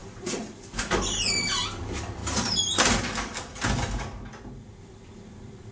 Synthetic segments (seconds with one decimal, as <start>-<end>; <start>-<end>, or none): 0.0-0.8; 2.2-5.7

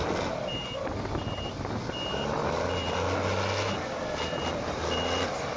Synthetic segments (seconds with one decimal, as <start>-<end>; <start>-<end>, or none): none